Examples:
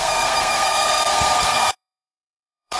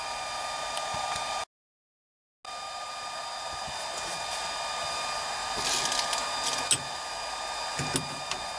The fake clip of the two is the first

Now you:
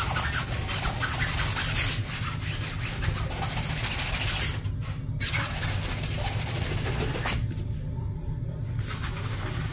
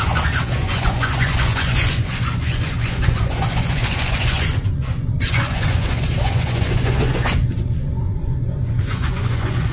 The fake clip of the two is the second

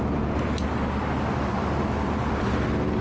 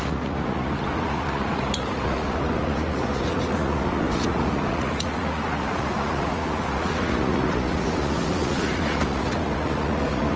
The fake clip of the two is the second